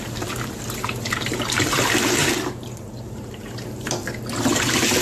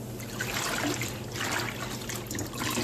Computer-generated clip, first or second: first